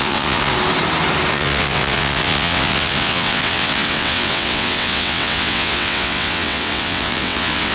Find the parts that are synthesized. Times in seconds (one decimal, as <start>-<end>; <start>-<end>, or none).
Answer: 0.0-0.5; 1.3-7.7